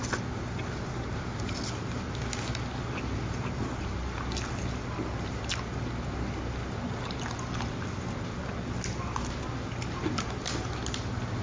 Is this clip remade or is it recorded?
recorded